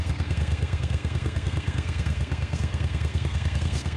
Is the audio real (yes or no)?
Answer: no